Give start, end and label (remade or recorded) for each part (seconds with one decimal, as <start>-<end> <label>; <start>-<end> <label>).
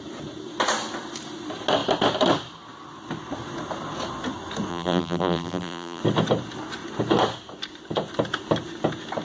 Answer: 0.0-4.7 recorded; 4.7-6.0 remade; 6.0-9.2 recorded